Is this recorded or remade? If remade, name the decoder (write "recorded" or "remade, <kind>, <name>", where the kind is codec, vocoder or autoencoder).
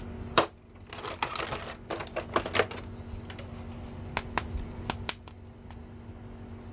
recorded